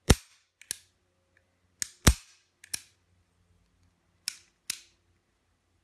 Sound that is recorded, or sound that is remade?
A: recorded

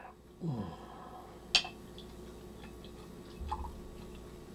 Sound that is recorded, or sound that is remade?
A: recorded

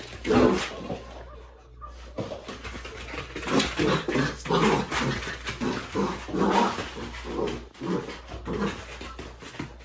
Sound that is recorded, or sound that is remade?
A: recorded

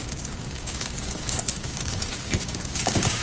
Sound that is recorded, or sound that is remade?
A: remade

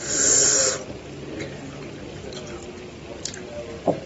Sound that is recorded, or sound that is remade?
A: recorded